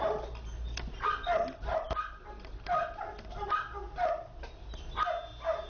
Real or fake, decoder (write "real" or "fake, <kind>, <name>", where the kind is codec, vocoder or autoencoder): real